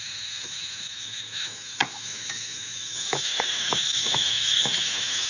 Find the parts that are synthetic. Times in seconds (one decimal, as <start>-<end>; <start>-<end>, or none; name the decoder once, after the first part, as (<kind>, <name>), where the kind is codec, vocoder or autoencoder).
0.0-5.3 (autoencoder, DAC-VAE)